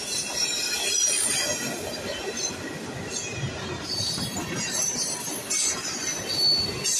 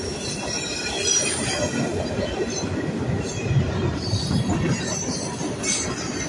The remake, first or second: second